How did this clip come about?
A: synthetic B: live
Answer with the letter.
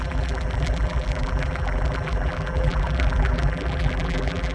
A